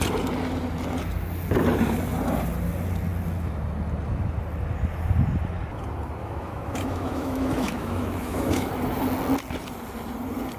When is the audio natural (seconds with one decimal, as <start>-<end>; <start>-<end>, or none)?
0.0-6.2; 8.7-10.6